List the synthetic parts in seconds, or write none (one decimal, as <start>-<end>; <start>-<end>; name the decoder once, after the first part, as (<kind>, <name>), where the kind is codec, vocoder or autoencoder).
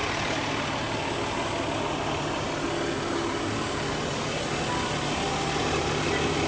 none